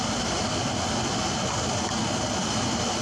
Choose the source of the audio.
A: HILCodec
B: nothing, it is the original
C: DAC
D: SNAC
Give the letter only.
B